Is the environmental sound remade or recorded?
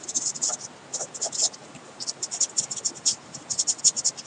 recorded